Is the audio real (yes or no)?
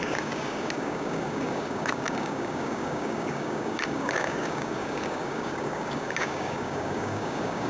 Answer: no